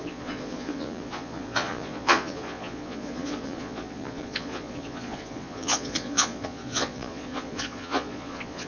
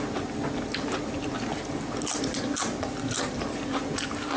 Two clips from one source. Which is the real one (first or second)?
second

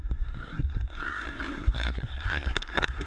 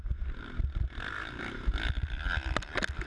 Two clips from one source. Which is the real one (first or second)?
second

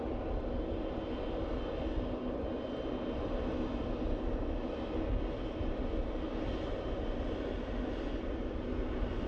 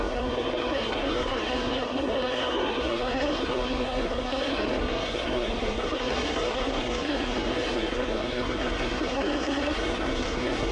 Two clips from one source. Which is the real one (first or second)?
first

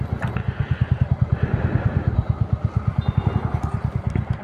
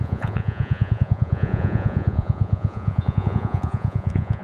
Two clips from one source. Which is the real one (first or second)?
first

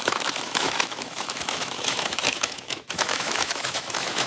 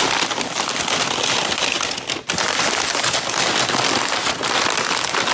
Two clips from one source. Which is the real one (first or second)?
second